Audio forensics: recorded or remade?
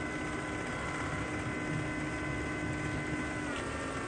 recorded